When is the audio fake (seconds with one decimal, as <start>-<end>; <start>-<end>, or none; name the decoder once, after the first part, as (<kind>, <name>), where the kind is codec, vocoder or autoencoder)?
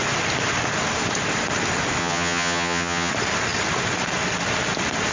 2.0-3.1 (vocoder, HiFi-GAN)